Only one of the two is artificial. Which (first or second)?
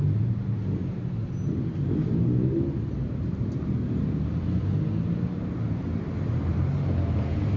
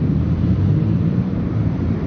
second